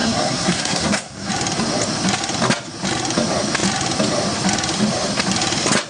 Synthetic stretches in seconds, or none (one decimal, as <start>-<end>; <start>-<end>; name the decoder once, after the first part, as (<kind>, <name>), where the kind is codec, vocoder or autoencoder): 0.0-1.3 (codec, SNAC)